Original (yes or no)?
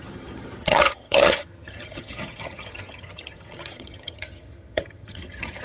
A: no